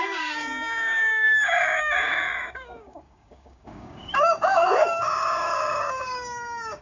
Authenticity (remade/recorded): remade